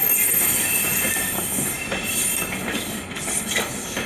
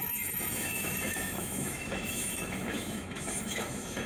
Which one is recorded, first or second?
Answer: first